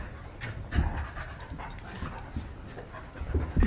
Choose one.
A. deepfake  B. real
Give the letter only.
B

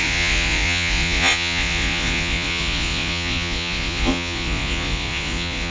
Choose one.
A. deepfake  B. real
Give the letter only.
A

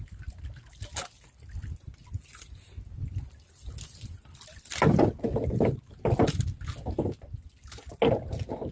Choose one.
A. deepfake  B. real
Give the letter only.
B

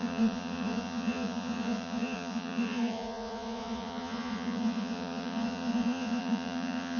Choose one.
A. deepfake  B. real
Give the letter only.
A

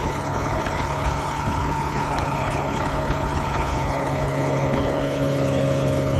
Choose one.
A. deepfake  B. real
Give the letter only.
A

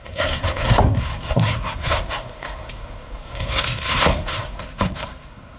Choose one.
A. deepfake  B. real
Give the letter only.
A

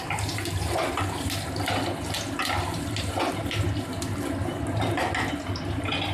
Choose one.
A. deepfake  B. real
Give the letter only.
B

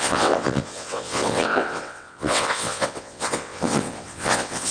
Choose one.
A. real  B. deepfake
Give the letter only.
B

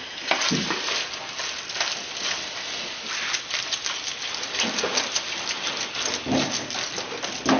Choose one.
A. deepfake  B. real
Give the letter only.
B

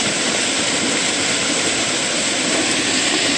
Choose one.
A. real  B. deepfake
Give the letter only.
A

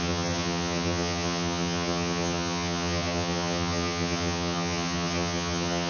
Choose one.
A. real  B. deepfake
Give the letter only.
B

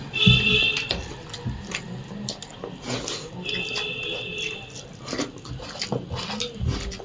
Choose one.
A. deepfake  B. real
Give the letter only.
B